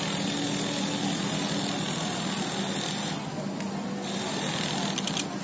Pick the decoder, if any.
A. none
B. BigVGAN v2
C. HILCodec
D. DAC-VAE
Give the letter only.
A